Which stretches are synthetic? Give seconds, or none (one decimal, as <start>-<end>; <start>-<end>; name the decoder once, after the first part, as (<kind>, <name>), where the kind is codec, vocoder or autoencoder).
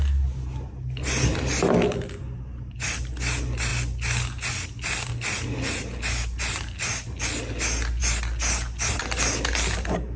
none